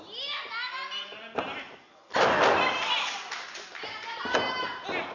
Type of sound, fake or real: real